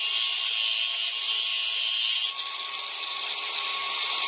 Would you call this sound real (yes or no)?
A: yes